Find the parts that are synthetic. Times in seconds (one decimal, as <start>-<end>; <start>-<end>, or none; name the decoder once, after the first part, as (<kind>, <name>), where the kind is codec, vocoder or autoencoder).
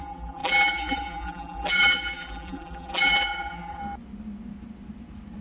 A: 0.0-3.8 (vocoder, BigVGAN v2)